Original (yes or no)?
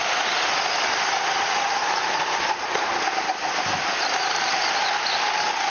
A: yes